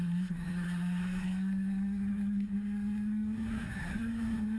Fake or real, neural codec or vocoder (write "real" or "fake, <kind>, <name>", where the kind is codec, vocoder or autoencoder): fake, codec, SNAC